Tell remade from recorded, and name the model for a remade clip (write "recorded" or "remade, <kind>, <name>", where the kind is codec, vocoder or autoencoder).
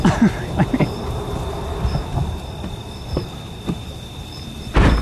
remade, vocoder, BigVGAN v2